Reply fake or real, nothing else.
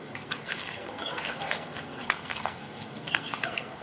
fake